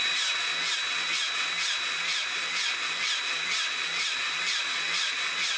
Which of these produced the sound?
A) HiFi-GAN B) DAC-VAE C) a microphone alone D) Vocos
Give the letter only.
C